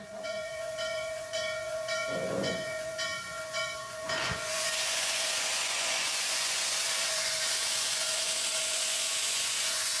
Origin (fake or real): fake